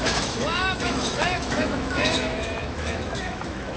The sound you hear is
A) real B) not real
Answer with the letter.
B